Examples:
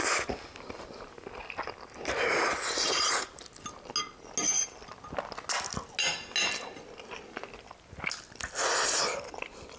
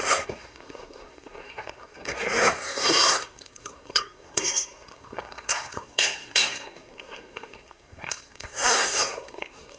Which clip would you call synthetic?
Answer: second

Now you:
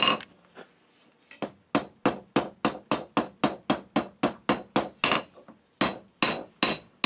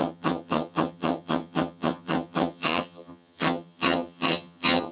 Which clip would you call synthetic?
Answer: second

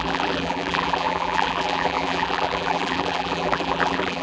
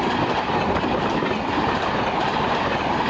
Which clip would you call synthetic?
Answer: first